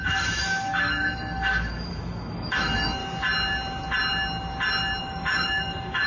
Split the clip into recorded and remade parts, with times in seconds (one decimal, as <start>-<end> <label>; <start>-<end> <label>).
0.0-3.0 remade; 3.0-5.0 recorded; 5.0-6.1 remade